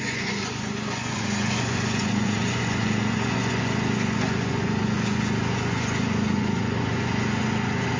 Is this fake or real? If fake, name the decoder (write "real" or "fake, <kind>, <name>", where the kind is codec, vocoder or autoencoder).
fake, vocoder, Vocos